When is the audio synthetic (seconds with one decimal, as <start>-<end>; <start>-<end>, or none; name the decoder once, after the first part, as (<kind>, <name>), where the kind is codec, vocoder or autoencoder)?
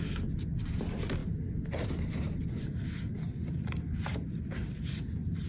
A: none